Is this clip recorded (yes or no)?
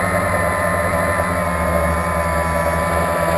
yes